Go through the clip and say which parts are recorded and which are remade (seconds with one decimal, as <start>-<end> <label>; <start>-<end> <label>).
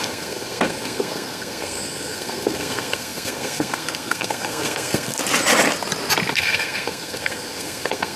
0.0-5.2 remade; 5.2-6.3 recorded; 6.3-8.2 remade